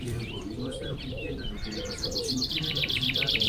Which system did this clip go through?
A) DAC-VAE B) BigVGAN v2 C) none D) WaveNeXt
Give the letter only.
B